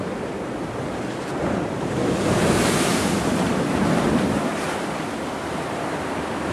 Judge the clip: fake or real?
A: fake